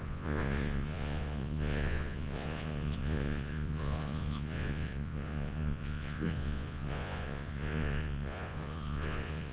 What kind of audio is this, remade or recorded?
remade